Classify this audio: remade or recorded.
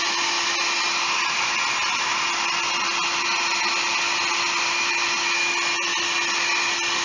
recorded